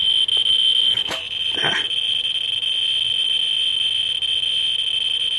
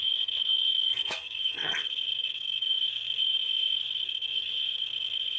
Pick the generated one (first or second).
second